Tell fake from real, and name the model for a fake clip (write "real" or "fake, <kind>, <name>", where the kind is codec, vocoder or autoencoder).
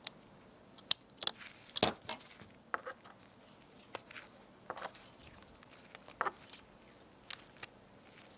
real